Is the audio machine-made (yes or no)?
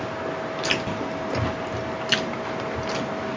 no